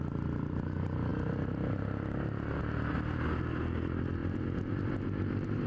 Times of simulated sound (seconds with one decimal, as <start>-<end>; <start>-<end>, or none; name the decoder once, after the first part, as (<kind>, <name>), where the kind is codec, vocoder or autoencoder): 0.0-5.7 (vocoder, BigVGAN v2)